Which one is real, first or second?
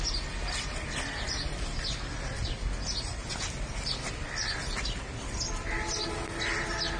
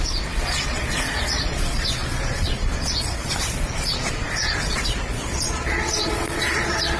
first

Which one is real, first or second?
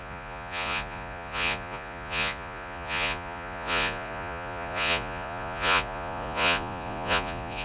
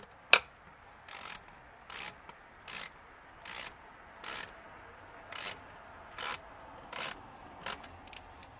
second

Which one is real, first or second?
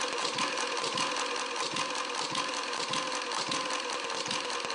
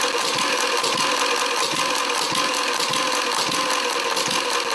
second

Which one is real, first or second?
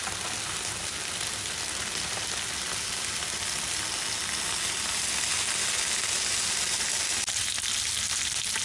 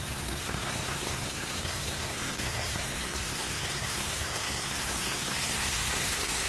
first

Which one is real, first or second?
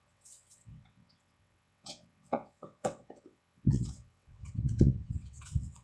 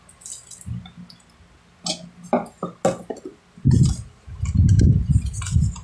second